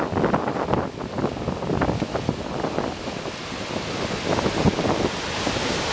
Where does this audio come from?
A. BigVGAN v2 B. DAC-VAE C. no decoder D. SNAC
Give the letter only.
C